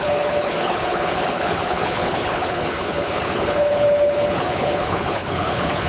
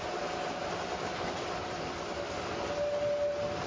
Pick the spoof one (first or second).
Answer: first